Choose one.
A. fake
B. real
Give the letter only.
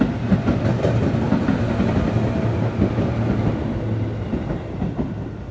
B